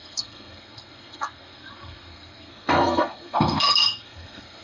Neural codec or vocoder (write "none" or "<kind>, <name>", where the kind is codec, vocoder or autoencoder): codec, SNAC